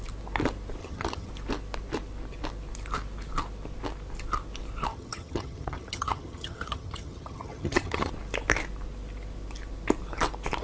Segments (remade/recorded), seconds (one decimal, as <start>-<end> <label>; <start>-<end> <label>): 0.0-0.8 recorded; 0.8-1.3 remade; 1.3-4.9 recorded; 4.9-8.1 remade; 8.1-10.6 recorded